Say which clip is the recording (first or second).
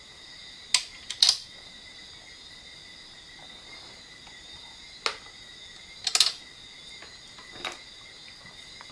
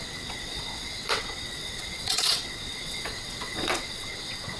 first